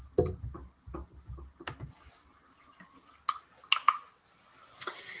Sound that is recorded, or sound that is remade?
recorded